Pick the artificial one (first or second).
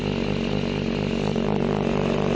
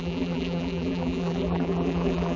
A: second